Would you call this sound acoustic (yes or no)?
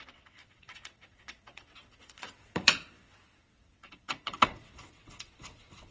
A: no